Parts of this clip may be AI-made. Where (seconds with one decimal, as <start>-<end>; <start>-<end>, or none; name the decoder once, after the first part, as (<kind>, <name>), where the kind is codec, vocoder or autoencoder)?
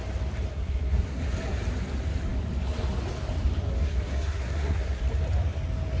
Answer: 0.5-1.2 (codec, SNAC); 3.8-5.0